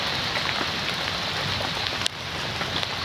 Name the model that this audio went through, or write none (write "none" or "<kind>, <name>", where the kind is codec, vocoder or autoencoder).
none